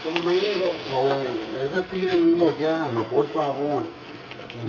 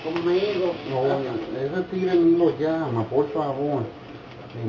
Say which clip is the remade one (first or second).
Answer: first